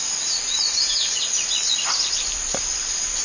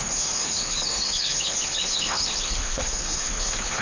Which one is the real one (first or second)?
first